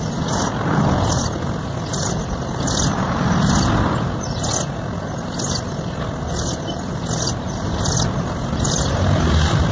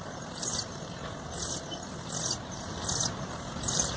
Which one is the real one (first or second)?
first